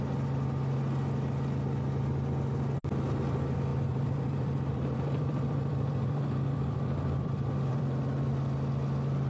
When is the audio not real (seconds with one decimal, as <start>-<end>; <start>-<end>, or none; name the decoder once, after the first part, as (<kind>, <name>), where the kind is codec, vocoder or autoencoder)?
3.7-8.3 (vocoder, BigVGAN v2)